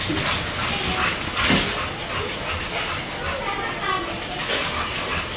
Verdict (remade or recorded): recorded